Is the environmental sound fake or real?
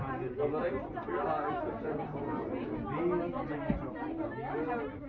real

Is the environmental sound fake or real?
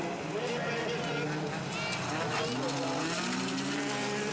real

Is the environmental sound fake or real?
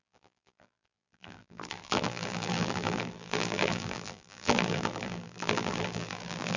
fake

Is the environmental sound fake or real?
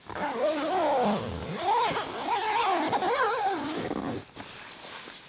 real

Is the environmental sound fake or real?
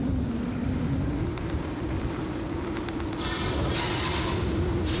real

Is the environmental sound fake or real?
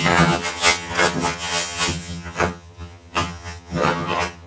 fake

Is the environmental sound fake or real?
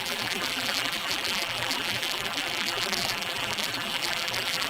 fake